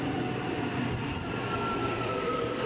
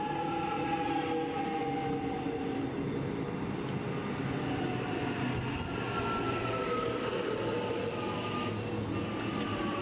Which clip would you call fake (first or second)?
first